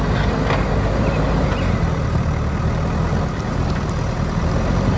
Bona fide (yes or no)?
yes